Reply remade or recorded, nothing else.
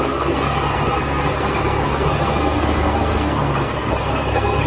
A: remade